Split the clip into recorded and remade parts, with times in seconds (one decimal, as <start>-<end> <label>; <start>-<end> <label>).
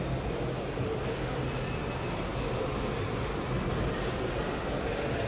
0.0-5.3 recorded